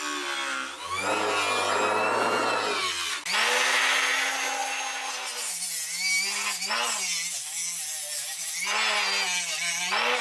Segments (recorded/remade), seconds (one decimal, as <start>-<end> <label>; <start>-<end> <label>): 0.0-10.2 recorded

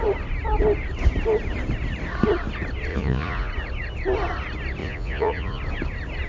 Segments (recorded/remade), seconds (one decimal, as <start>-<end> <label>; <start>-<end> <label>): 0.0-2.9 recorded; 2.9-3.5 remade; 3.5-4.8 recorded; 4.8-5.6 remade; 5.6-6.3 recorded